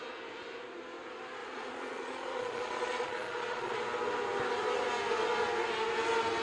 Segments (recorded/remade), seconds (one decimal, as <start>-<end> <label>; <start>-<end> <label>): 0.0-1.4 recorded; 1.4-3.8 remade; 3.8-6.4 recorded